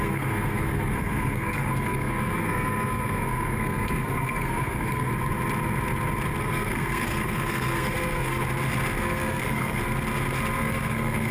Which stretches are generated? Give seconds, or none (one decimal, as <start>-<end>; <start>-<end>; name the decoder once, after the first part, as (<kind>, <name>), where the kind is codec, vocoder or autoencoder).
0.0-5.1 (codec, SNAC); 6.4-8.4; 9.0-9.8; 10.6-11.3